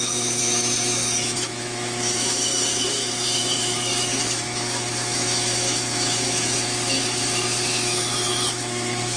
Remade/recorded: remade